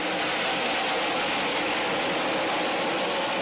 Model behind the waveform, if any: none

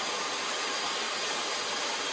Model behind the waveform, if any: none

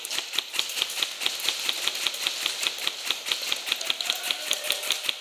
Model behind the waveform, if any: none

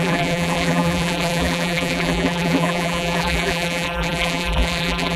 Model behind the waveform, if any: vocoder, BigVGAN v2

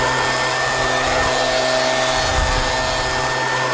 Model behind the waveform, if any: none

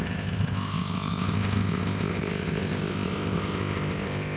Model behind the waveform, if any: codec, ZipCodec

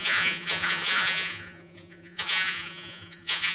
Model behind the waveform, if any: vocoder, Vocos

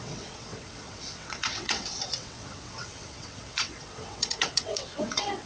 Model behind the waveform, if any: vocoder, WaveNeXt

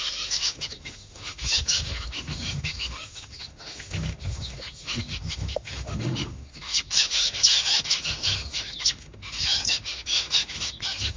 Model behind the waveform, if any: autoencoder, DAC-VAE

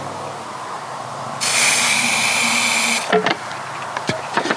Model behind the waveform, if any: none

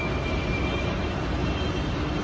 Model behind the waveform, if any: none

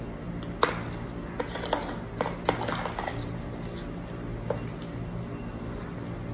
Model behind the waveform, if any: none